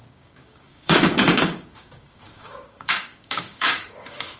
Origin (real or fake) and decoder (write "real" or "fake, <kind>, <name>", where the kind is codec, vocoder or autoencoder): fake, codec, DAC